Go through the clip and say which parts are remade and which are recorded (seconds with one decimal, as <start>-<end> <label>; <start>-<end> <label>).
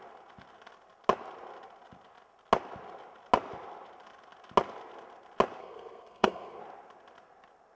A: 0.0-5.6 recorded; 5.6-6.6 remade; 6.6-7.8 recorded